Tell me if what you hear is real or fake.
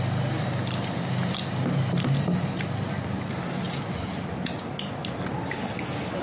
real